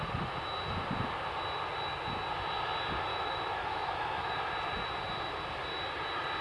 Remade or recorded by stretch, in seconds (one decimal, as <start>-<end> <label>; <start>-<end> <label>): 0.0-3.1 recorded; 3.1-4.3 remade; 4.3-6.4 recorded